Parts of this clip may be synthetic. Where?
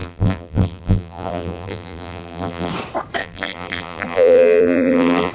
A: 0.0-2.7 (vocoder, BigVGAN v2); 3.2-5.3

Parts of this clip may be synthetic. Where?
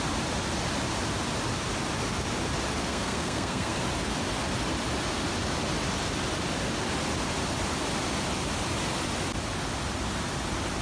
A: 2.8-3.8 (codec, SNAC)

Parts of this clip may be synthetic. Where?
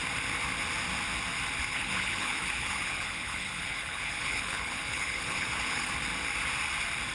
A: 1.7-5.9 (codec, HILCodec)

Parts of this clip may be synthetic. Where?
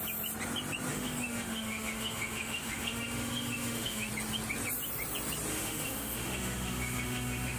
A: 0.9-4.1 (autoencoder, DAC-VAE); 5.5-7.6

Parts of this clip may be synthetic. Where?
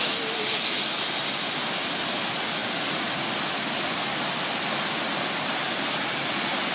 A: none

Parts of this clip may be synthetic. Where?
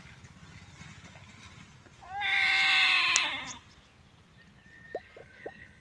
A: 5.2-5.8 (codec, HILCodec)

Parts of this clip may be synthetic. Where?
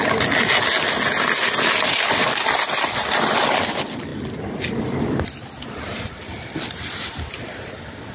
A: none